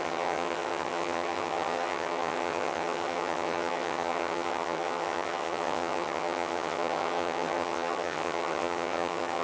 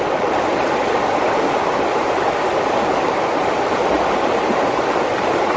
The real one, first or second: second